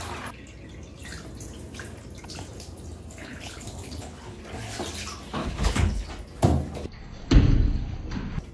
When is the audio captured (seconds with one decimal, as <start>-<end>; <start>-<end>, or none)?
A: 0.0-3.2; 4.4-5.4; 6.1-8.5